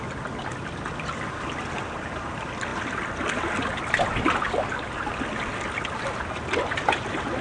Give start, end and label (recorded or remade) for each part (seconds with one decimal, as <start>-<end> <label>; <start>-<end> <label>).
0.0-7.4 recorded